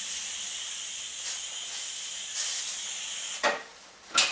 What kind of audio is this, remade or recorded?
recorded